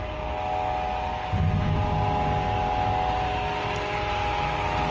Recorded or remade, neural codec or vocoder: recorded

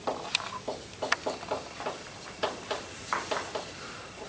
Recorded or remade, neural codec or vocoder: recorded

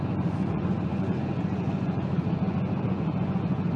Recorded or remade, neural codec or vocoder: remade, vocoder, Vocos